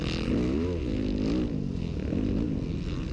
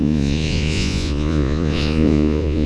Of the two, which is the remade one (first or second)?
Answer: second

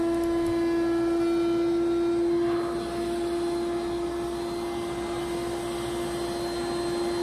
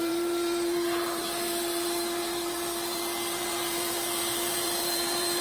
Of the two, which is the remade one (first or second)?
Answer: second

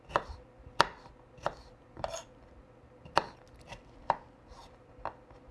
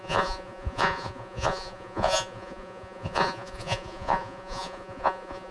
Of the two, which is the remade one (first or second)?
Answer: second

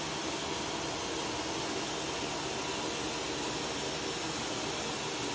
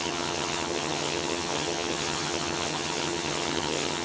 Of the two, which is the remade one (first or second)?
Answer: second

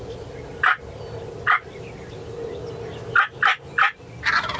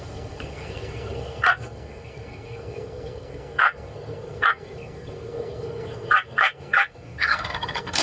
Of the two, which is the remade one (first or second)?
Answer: second